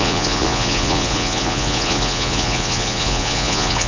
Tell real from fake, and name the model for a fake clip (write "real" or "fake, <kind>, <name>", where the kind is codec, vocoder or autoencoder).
fake, vocoder, Vocos